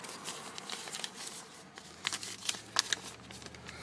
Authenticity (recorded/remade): recorded